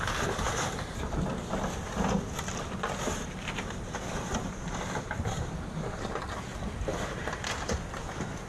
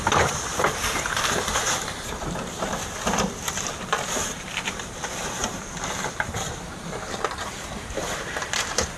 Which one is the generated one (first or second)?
second